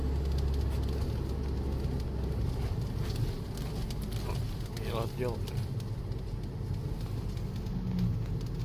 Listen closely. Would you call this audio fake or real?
real